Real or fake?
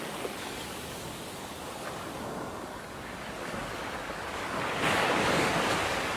fake